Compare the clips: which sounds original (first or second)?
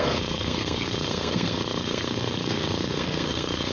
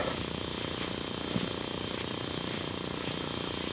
second